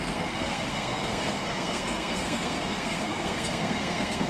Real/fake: fake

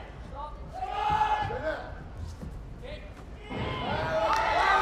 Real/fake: real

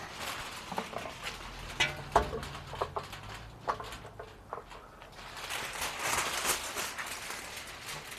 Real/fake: real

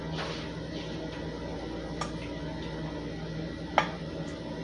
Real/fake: real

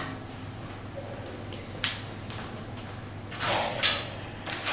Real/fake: real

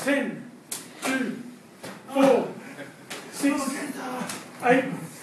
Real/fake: real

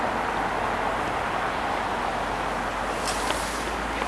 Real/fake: real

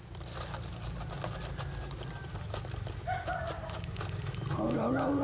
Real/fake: real